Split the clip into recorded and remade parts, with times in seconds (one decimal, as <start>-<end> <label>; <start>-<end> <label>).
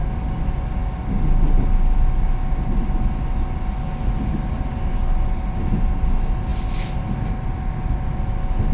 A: 0.0-8.7 recorded